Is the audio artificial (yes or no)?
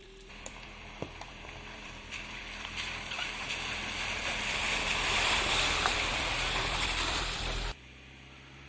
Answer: yes